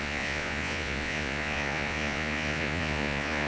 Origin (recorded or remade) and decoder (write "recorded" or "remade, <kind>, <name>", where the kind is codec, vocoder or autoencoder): remade, vocoder, Vocos